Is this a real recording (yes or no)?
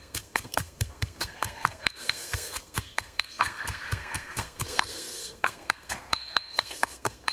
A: no